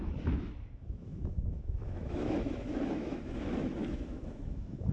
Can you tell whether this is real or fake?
fake